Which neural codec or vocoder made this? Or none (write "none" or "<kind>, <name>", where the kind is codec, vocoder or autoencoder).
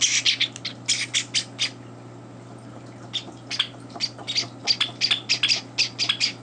none